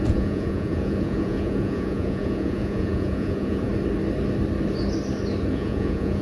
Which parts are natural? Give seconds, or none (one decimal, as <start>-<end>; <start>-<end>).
3.7-5.5